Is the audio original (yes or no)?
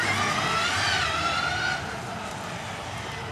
yes